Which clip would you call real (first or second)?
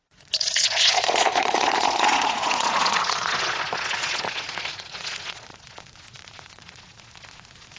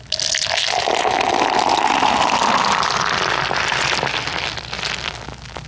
second